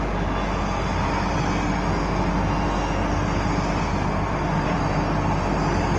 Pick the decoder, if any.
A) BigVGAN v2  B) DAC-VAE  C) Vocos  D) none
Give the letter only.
D